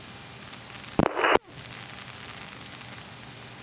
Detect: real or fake real